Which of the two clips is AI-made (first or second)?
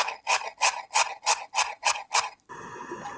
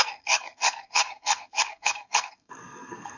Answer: second